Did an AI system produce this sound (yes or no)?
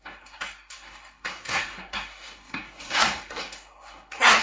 yes